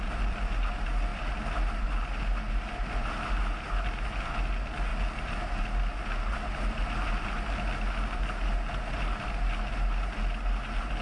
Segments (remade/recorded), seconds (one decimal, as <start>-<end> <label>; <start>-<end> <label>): 0.0-11.0 recorded